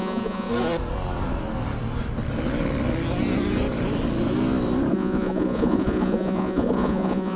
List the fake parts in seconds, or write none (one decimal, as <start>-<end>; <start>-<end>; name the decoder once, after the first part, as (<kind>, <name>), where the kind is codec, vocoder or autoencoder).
0.0-0.5 (vocoder, Vocos); 4.9-7.4